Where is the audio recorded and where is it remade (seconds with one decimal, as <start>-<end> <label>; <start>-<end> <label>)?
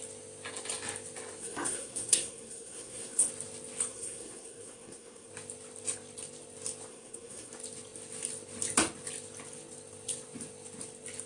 0.0-1.4 recorded; 1.4-3.3 remade; 3.3-3.9 recorded; 3.9-5.3 remade; 5.3-6.9 recorded; 6.9-7.5 remade; 7.5-11.3 recorded